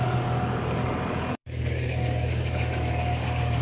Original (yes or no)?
no